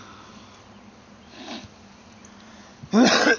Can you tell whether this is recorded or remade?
recorded